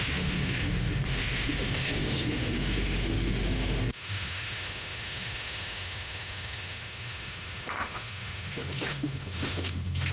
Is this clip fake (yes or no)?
yes